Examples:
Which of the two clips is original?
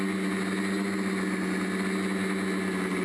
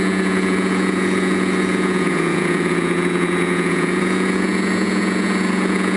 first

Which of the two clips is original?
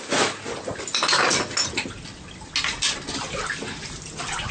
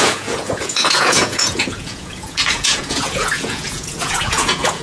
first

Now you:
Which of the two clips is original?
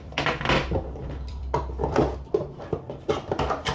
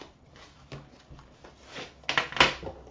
second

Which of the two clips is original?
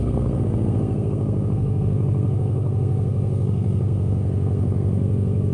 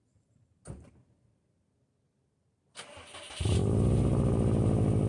second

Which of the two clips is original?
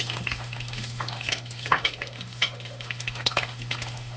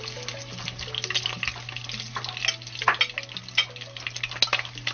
second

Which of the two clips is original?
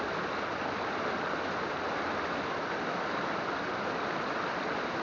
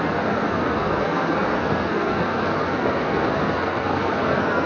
first